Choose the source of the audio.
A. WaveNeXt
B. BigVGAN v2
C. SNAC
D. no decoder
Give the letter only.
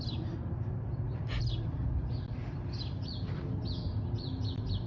B